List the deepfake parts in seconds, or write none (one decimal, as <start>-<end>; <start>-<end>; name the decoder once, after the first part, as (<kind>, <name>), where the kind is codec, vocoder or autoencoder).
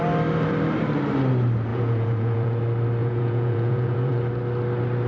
1.7-2.6 (vocoder, Vocos); 3.0-4.2